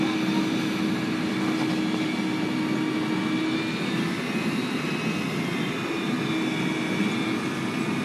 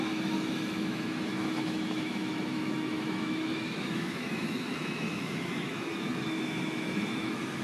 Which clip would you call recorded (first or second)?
first